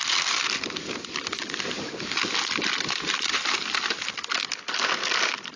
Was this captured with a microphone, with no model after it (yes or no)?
yes